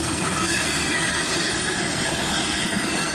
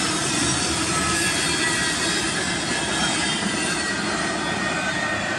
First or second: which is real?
second